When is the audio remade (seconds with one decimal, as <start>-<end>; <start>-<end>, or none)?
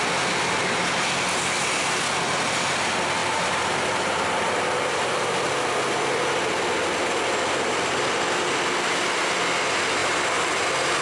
3.2-5.5; 10.0-10.6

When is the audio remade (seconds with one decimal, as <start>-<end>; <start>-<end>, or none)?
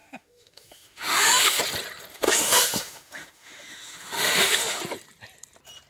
0.0-1.6; 2.1-4.8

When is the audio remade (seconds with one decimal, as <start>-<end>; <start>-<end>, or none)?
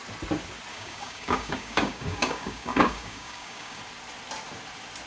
0.7-3.8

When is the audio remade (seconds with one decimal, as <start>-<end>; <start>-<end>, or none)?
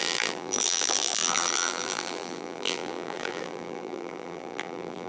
0.0-5.1